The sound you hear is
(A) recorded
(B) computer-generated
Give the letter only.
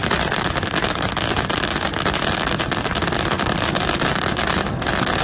A